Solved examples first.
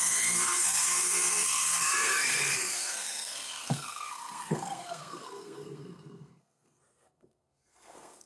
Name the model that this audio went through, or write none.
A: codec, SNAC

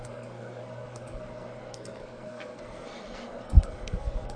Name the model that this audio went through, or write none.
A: codec, SNAC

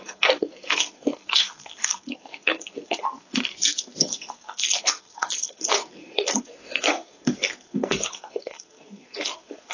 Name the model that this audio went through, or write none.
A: codec, SNAC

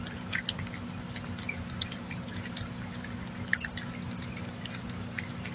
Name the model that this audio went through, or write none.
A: none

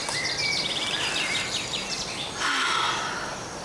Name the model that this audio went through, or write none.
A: none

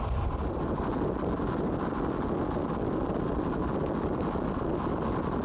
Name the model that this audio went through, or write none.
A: none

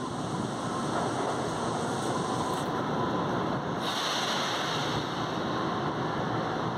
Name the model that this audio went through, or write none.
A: none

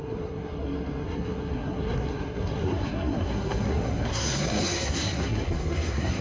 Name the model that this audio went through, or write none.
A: codec, SNAC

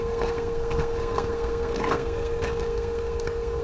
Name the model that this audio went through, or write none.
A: codec, SNAC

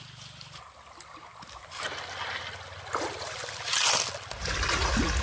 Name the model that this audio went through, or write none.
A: none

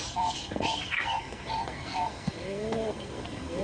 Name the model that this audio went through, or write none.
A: codec, SNAC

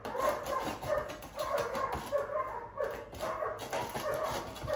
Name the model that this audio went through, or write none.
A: none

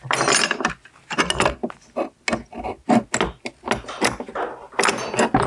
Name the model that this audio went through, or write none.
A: none